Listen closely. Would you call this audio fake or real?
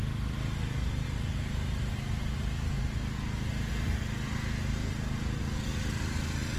real